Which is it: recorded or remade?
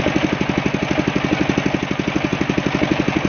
recorded